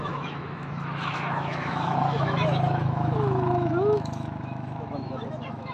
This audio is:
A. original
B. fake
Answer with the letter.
B